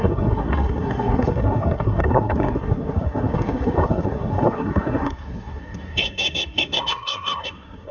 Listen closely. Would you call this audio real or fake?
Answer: fake